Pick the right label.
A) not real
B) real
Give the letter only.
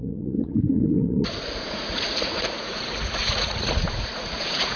A